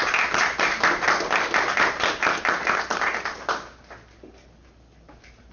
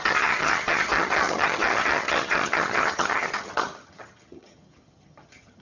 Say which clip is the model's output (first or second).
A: second